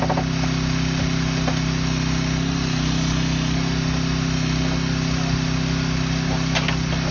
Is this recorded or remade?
recorded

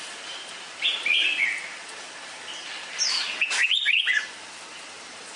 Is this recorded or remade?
recorded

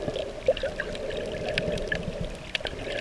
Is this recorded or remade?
recorded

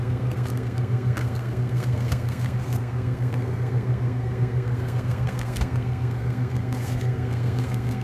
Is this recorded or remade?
remade